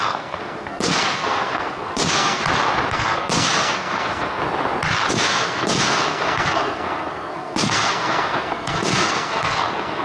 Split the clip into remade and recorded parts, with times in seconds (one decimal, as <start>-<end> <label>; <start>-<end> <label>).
0.0-2.4 remade; 2.4-2.9 recorded; 2.9-4.4 remade; 4.4-5.1 recorded; 5.1-10.0 remade